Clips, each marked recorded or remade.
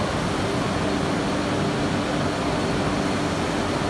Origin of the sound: recorded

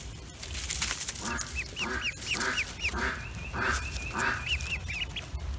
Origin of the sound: recorded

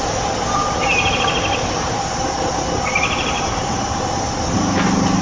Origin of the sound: recorded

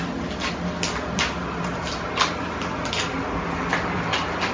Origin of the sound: recorded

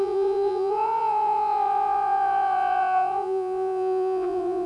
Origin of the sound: remade